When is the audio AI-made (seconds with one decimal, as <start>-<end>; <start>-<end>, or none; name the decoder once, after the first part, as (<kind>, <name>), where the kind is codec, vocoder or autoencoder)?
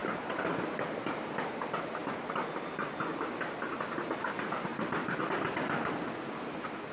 none